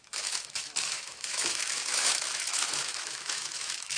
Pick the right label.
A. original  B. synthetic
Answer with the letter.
B